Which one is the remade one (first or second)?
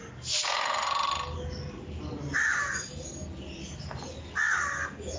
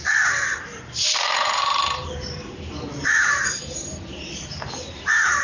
second